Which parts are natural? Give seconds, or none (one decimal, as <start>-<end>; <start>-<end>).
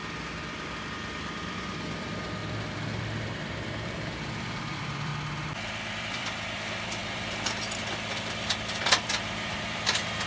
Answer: 0.0-1.5; 5.1-6.0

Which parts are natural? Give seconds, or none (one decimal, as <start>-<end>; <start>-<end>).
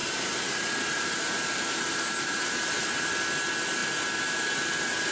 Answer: 3.1-5.1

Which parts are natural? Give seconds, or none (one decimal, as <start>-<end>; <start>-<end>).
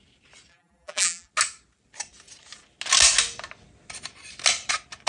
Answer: 0.0-0.5; 1.3-5.1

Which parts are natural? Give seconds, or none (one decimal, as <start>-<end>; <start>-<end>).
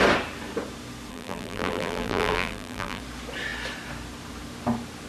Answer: 0.0-1.1; 3.0-5.1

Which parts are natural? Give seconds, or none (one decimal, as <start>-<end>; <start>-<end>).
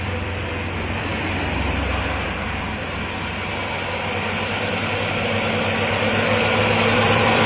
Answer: none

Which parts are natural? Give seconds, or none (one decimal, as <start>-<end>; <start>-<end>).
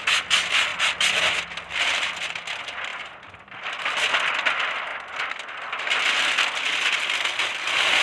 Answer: 0.0-8.0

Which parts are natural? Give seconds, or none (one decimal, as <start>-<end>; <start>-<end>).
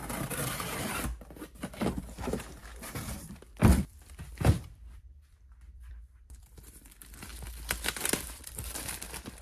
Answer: 7.3-8.2